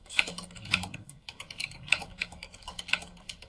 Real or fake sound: fake